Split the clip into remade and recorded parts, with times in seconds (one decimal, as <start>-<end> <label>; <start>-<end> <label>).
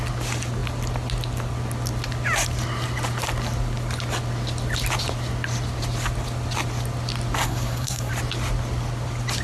0.0-7.4 recorded; 7.4-8.1 remade; 8.1-9.4 recorded